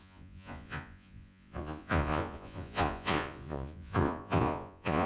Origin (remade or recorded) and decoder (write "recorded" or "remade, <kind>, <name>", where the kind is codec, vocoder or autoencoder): remade, vocoder, Vocos